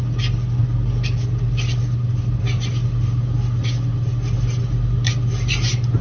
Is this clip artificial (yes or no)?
no